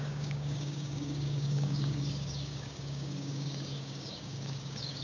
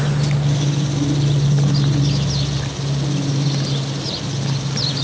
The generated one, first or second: first